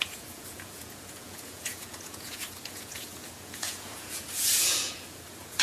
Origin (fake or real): fake